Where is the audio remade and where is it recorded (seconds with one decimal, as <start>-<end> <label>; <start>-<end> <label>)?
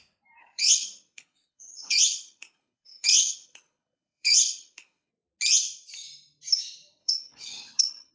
0.0-0.4 recorded; 0.4-5.1 remade; 5.1-7.0 recorded; 7.0-8.1 remade